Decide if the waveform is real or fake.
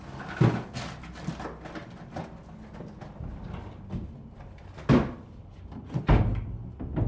real